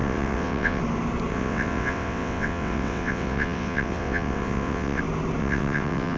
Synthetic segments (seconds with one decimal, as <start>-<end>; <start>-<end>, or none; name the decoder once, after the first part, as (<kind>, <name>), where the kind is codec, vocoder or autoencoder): 0.0-0.8 (vocoder, WaveNeXt); 1.3-5.0; 5.4-6.2